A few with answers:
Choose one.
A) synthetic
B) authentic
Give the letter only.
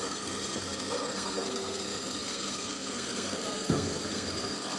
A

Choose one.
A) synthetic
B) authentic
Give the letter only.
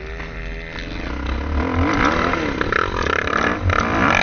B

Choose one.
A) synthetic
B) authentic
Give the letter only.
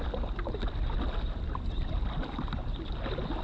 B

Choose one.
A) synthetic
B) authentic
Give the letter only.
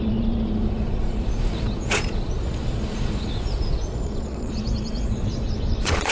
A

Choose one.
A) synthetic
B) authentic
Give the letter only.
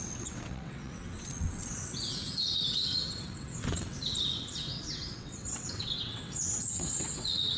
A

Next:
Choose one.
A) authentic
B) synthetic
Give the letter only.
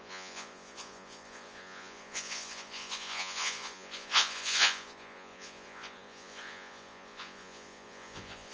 B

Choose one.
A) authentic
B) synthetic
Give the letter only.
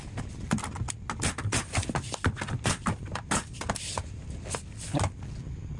B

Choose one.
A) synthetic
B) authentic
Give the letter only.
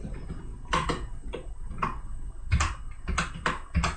B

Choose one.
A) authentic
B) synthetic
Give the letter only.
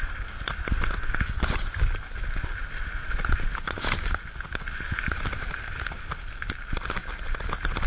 A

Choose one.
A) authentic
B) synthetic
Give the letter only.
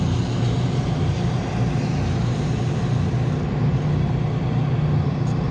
A